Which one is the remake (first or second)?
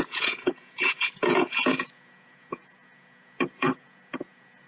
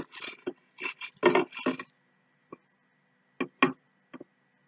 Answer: first